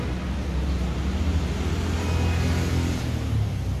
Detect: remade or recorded recorded